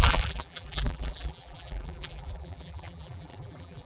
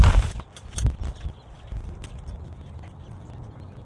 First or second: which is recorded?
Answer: second